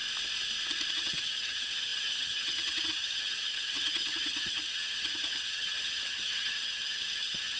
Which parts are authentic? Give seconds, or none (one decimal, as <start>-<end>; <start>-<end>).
0.0-0.9